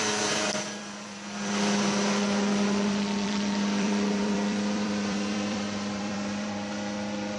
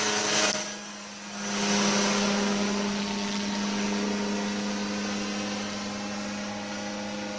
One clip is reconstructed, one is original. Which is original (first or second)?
second